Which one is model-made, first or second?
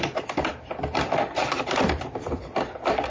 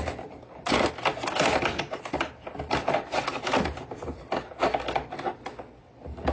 first